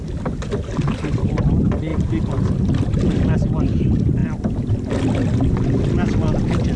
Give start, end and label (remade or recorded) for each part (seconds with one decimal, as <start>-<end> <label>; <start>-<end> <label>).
0.0-6.8 recorded